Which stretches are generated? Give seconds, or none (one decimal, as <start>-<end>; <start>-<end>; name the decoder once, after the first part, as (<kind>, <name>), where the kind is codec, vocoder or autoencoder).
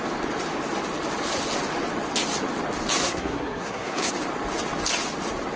3.0-4.1 (codec, SNAC)